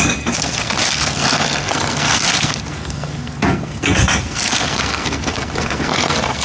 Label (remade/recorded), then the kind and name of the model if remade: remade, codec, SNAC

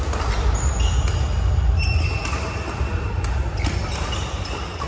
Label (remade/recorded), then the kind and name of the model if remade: recorded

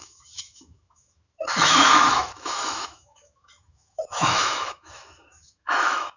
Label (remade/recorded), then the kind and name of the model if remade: remade, autoencoder, DAC-VAE